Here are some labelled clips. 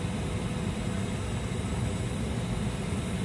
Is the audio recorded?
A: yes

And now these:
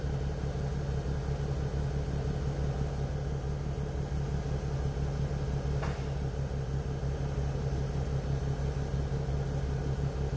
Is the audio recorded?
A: yes